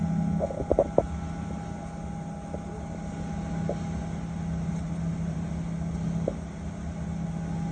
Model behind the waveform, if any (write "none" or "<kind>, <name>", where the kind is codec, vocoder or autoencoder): none